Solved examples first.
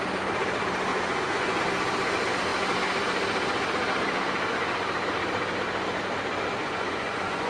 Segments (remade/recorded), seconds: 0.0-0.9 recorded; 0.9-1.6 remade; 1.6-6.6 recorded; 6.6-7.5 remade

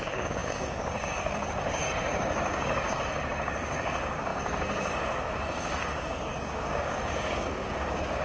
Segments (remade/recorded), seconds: 0.0-8.2 remade

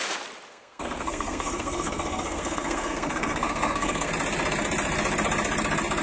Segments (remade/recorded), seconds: 0.0-0.5 recorded; 0.5-4.1 remade; 4.1-6.0 recorded

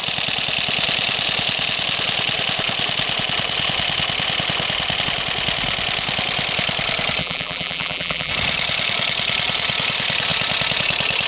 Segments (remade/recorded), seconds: 0.0-7.2 recorded; 7.2-8.3 remade; 8.3-11.3 recorded

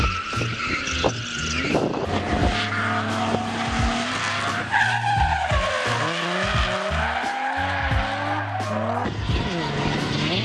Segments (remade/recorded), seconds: 0.0-10.4 recorded

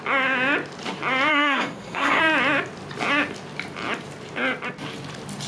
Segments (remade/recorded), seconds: 0.0-1.3 recorded; 1.3-2.2 remade; 2.2-5.5 recorded